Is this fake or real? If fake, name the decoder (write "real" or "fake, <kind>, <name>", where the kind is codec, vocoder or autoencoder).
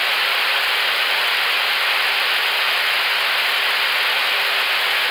real